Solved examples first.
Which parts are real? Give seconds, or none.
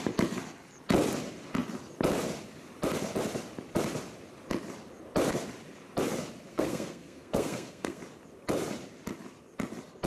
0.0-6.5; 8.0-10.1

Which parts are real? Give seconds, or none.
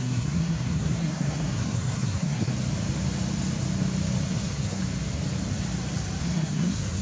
2.5-4.3; 4.8-6.2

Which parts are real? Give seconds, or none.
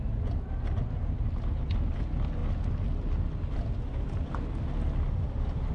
0.0-5.7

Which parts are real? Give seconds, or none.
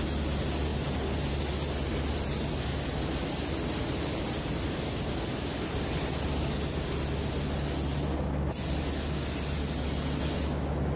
0.0-11.0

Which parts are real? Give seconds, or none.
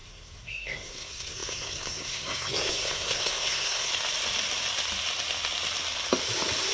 3.9-6.7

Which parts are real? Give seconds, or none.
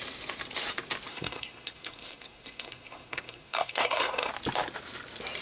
0.0-1.1; 4.3-5.4